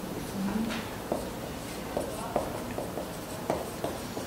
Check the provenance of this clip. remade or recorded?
remade